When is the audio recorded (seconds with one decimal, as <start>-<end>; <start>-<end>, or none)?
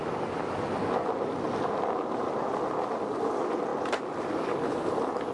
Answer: 0.0-5.3